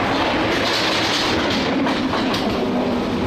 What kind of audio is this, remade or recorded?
recorded